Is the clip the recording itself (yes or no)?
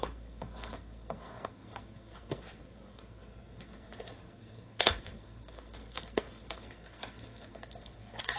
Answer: no